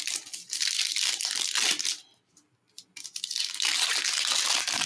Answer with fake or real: real